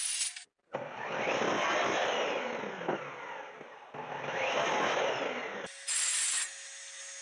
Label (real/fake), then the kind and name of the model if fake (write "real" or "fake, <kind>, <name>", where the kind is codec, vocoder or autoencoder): real